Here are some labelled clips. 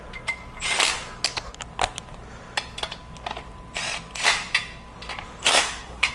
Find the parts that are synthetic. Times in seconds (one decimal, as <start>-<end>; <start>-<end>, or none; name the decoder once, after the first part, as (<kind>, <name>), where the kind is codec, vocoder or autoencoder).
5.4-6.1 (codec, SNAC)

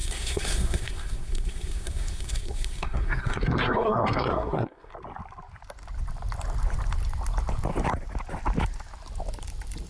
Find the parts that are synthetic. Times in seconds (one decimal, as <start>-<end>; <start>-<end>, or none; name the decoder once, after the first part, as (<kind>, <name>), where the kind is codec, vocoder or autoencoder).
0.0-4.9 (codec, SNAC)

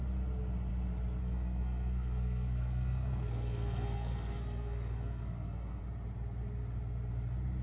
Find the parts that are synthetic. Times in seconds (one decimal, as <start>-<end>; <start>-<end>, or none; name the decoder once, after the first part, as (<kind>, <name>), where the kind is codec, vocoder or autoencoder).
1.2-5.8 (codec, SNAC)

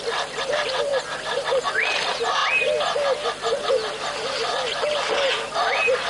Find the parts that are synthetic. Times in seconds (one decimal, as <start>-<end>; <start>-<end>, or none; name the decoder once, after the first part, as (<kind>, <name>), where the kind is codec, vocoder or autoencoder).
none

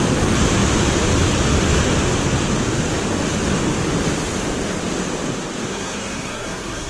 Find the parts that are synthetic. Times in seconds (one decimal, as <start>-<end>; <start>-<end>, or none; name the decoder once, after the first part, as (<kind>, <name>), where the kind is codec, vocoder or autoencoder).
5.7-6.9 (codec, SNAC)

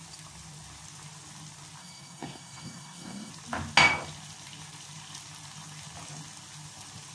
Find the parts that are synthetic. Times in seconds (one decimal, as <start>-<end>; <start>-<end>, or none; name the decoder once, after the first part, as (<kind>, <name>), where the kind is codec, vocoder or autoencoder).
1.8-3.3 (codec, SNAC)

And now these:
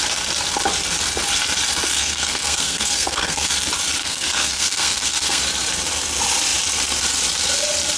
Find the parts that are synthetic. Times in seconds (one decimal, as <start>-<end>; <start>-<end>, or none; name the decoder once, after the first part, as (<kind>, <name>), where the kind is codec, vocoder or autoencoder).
1.9-3.5 (codec, SNAC); 4.0-5.4

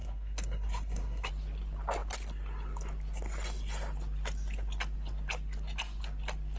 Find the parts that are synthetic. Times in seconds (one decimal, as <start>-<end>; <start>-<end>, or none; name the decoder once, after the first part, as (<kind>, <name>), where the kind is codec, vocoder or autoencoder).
0.0-1.3 (codec, SNAC)